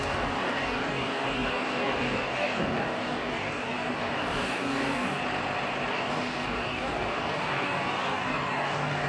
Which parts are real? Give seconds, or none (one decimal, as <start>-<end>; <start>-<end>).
5.2-5.9